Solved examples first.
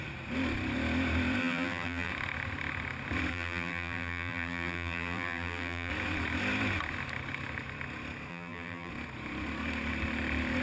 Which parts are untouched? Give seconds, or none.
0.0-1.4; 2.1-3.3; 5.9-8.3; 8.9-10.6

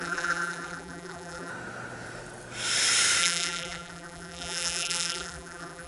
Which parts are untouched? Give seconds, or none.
1.5-3.2

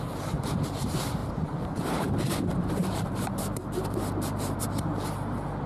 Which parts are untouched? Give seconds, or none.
none